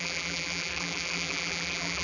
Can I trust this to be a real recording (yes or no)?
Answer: no